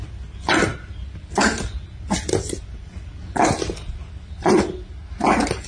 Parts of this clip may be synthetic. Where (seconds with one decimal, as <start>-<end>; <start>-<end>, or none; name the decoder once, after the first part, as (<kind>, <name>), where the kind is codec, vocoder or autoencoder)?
none